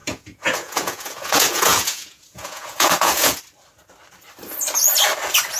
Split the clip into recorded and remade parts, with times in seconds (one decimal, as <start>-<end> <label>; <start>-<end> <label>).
0.0-3.4 remade; 3.4-5.6 recorded